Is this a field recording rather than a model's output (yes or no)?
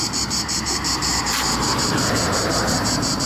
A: no